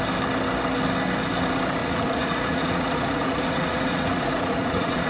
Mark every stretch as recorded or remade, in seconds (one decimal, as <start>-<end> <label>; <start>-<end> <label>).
0.0-1.8 recorded; 1.8-5.1 remade